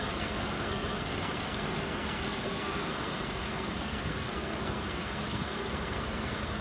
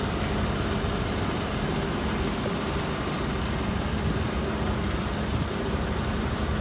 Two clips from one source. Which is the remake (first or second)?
first